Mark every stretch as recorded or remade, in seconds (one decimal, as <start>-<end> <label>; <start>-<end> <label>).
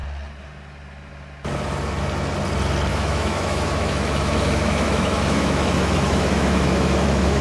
0.0-2.9 recorded; 2.9-7.4 remade